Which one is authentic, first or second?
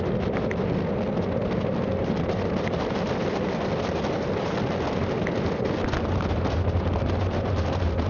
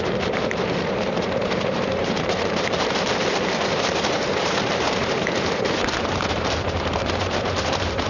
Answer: first